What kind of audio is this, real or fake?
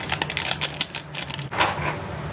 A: real